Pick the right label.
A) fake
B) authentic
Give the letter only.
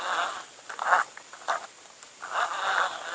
B